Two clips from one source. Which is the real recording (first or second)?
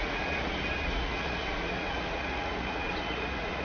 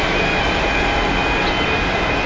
second